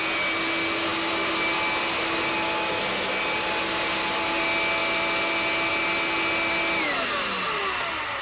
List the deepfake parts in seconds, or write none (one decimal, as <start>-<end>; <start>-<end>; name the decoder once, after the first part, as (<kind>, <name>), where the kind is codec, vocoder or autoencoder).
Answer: none